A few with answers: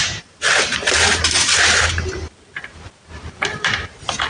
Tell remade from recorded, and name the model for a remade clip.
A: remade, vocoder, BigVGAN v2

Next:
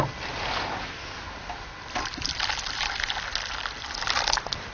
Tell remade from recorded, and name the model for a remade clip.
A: recorded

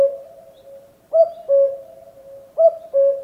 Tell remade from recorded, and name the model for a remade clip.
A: remade, vocoder, BigVGAN v2